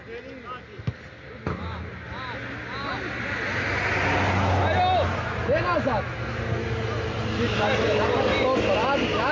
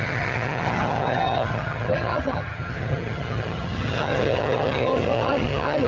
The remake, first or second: second